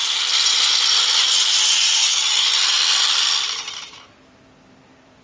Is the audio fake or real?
real